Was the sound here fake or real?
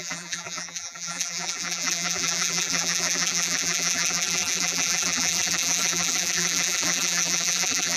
fake